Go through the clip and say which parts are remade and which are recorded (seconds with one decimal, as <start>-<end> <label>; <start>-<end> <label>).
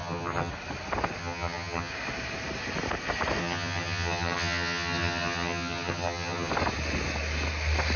0.0-0.5 remade; 0.5-1.2 recorded; 1.2-1.9 remade; 1.9-3.4 recorded; 3.4-6.5 remade; 6.5-8.0 recorded